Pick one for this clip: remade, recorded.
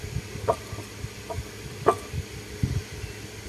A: recorded